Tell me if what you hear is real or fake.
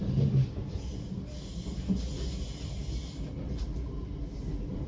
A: real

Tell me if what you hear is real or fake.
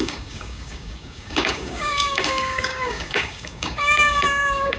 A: fake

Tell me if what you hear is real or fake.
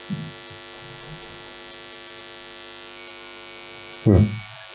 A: real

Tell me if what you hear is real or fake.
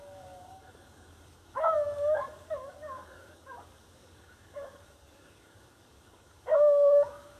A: fake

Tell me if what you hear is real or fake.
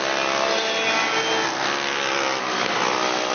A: real